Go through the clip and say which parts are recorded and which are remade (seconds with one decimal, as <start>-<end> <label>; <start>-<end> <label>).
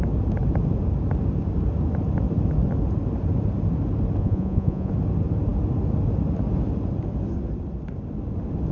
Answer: 0.0-4.2 recorded; 4.2-4.9 remade; 4.9-8.7 recorded